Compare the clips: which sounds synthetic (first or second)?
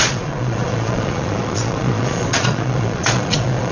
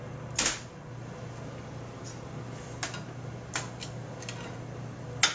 first